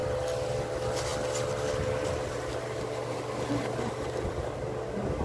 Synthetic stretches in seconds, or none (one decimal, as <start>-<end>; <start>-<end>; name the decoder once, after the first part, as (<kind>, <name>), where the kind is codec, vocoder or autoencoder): none